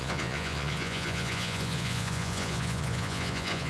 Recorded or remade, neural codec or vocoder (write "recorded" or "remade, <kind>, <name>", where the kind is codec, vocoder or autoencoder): remade, vocoder, Vocos